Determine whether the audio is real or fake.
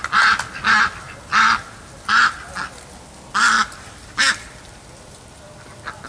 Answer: real